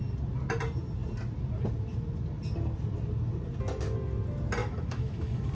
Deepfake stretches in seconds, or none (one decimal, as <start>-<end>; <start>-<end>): 4.6-5.5